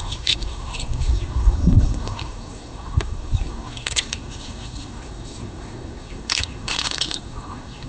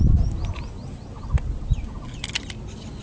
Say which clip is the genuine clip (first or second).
second